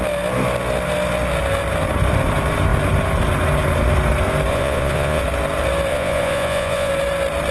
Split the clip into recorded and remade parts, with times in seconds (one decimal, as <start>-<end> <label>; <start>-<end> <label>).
0.0-4.5 recorded; 4.5-5.2 remade; 5.2-5.9 recorded; 5.9-6.9 remade; 6.9-7.5 recorded